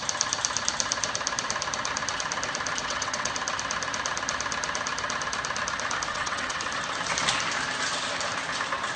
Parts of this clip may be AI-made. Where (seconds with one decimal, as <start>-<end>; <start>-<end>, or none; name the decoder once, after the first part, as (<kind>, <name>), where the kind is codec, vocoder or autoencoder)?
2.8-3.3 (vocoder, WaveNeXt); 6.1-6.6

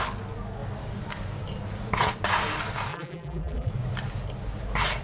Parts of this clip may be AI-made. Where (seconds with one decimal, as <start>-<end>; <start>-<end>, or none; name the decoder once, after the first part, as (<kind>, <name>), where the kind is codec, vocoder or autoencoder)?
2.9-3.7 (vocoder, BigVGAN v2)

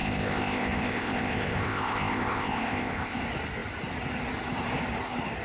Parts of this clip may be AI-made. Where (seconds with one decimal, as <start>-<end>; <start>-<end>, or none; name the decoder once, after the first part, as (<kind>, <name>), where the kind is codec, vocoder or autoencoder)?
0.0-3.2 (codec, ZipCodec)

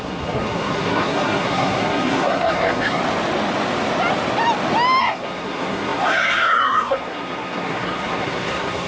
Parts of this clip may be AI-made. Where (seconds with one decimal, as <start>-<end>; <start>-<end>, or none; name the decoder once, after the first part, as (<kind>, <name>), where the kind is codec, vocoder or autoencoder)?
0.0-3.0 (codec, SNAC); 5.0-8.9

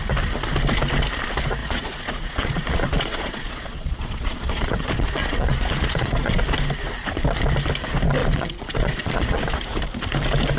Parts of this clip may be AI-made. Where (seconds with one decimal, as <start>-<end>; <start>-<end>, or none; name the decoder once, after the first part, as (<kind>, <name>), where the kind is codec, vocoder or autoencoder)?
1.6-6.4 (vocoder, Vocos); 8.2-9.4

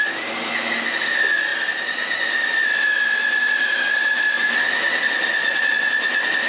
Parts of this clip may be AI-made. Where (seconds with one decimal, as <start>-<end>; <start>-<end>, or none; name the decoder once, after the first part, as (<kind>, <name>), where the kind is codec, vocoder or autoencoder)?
5.4-5.9 (vocoder, Vocos)